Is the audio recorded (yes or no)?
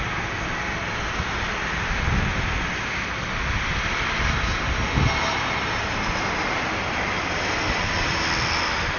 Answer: yes